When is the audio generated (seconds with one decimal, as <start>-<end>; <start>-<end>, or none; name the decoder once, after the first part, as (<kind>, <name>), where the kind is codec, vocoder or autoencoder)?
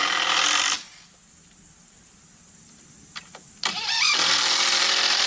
none